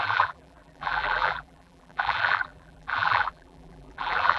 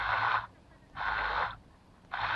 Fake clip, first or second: first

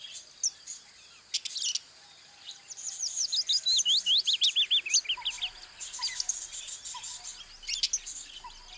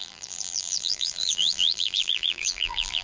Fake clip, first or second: second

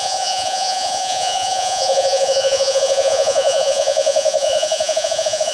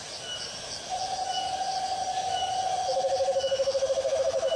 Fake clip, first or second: first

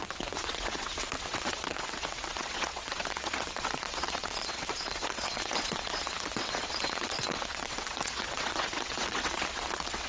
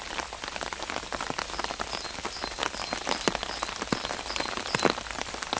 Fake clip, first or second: first